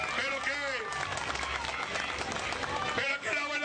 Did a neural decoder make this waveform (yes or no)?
no